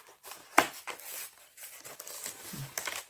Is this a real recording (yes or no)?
yes